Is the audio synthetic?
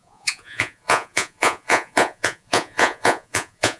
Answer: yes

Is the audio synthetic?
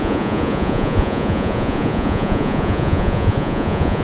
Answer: yes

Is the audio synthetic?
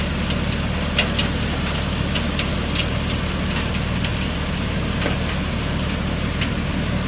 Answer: no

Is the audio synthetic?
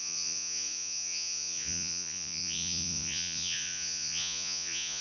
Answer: yes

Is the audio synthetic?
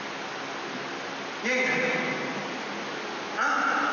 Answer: no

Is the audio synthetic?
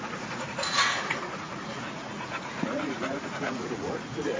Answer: yes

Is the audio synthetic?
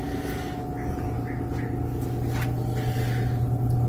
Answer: no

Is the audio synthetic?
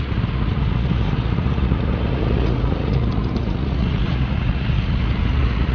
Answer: yes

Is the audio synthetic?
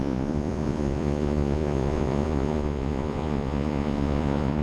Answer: yes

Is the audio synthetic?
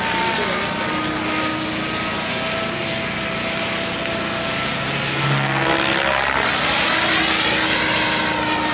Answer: no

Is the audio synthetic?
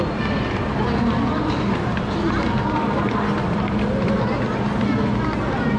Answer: no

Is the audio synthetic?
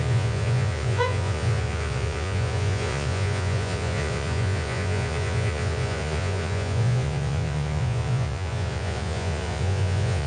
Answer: yes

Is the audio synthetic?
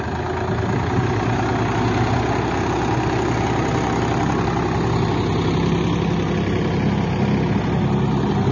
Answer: no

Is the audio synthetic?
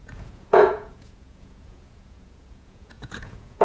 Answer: yes